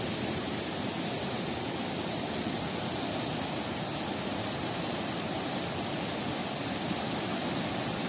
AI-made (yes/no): no